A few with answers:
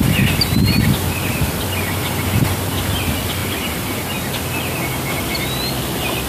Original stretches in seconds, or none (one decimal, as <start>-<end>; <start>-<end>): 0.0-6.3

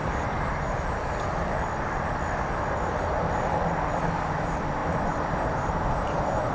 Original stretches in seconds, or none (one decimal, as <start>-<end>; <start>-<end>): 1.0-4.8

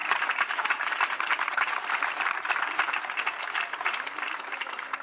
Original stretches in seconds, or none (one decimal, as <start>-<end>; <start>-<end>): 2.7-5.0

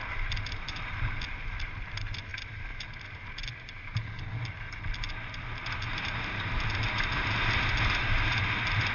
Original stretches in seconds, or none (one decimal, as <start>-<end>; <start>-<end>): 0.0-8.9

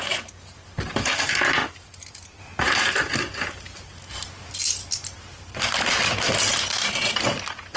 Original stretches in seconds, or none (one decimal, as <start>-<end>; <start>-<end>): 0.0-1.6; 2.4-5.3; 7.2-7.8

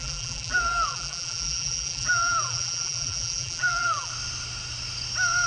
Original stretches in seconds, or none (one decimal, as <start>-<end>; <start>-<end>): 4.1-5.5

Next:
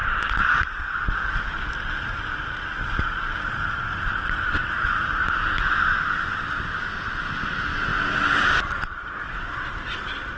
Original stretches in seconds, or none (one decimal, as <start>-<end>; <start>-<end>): 0.0-10.4

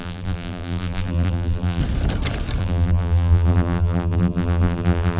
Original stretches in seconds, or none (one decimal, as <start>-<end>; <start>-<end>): 1.8-2.6